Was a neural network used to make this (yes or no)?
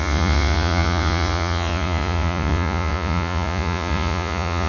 yes